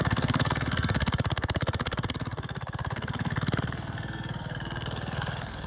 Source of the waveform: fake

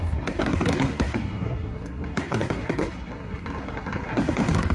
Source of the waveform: fake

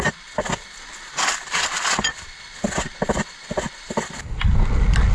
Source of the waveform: real